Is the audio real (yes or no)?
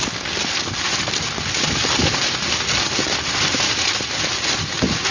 yes